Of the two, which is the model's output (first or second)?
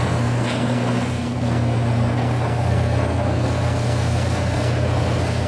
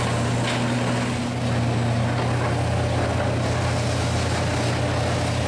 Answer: first